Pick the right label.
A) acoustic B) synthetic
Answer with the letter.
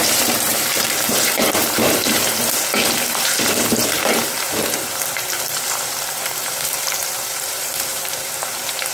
B